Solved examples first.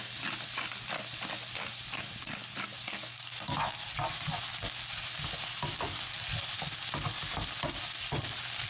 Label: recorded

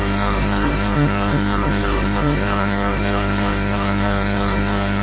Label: remade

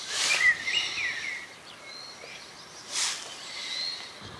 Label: recorded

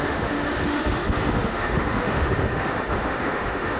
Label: remade